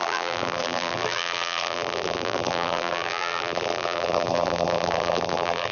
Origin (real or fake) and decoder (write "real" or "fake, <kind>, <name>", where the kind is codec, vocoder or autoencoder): fake, vocoder, BigVGAN v2